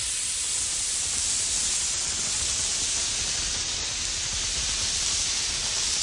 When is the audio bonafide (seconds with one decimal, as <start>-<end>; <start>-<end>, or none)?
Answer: 0.0-6.0